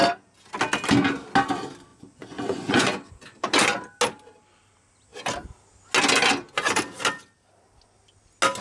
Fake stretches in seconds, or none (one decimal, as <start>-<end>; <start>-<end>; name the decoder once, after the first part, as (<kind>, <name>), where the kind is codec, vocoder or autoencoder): 1.9-3.1 (vocoder, Vocos)